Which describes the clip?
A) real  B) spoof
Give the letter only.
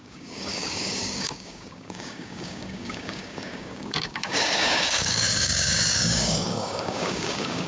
B